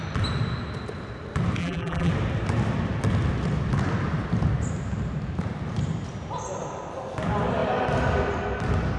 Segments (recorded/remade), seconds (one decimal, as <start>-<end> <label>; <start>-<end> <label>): 0.0-1.6 recorded; 1.6-2.1 remade; 2.1-9.0 recorded